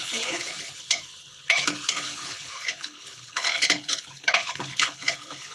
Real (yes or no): no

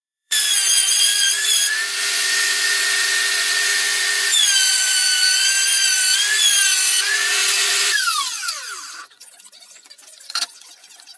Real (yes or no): no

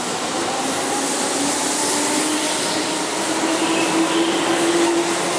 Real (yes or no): yes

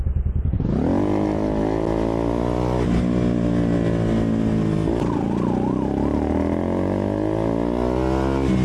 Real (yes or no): yes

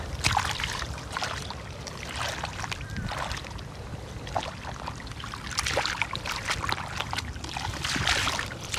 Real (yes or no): no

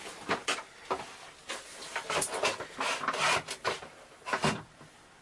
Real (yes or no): yes